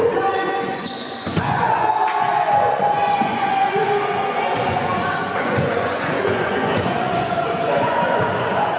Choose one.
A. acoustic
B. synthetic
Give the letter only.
B